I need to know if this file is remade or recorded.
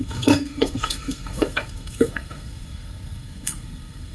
remade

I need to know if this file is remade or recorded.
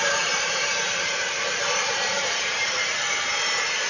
remade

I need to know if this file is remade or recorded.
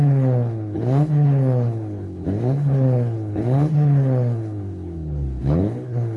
remade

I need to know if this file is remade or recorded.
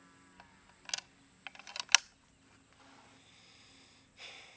recorded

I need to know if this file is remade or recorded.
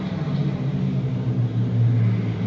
recorded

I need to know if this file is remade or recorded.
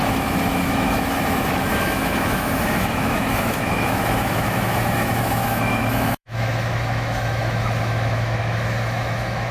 remade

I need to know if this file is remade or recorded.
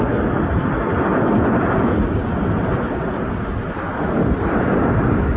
recorded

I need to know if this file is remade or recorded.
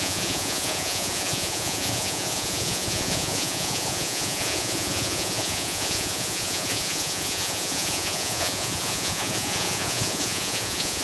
remade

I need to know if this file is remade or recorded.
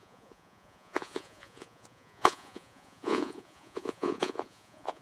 remade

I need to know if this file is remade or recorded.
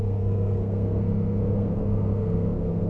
remade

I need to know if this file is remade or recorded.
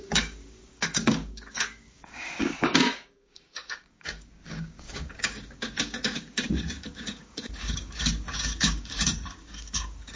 remade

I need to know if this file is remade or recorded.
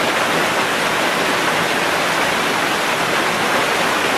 recorded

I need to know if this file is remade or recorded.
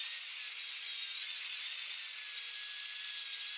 recorded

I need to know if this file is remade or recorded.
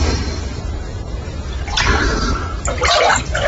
recorded